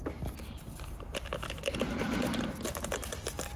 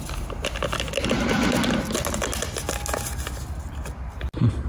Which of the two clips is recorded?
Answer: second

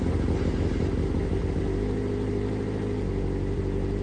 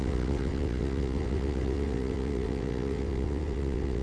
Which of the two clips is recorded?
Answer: first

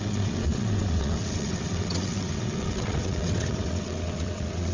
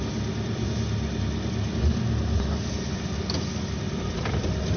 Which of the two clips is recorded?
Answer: second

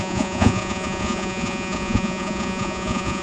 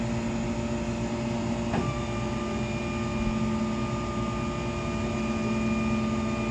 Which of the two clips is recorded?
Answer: second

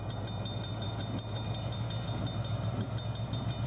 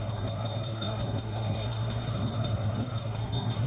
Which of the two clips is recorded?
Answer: first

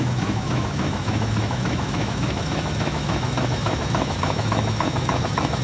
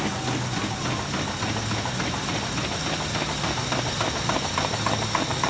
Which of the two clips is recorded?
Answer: second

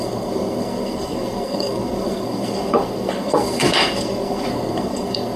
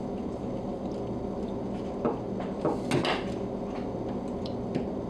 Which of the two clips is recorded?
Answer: second